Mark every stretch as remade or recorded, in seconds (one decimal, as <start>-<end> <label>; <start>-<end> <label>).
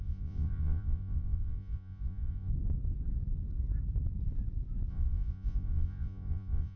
0.0-2.5 remade; 2.5-4.9 recorded; 4.9-6.8 remade